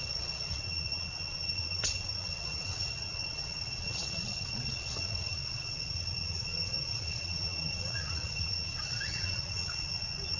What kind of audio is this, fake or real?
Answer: fake